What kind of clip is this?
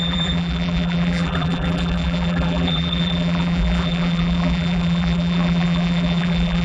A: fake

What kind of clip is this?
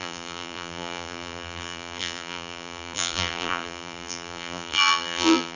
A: fake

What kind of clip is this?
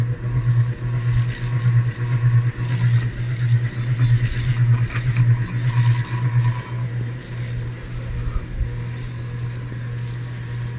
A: real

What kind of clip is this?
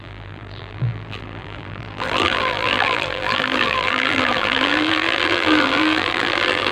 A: fake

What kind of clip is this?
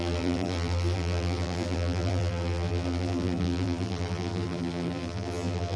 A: fake